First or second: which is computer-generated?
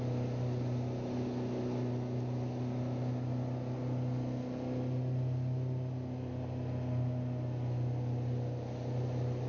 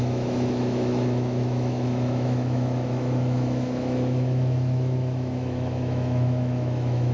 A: second